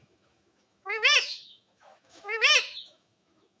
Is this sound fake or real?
fake